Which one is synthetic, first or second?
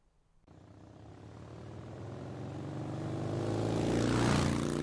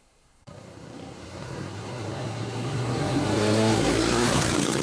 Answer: second